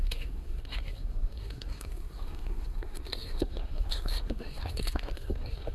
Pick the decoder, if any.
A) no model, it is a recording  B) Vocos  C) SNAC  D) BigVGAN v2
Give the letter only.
C